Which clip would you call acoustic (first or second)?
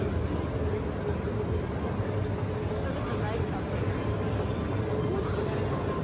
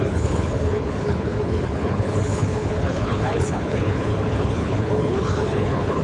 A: first